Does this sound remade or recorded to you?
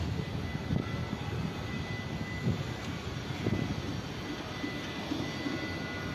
recorded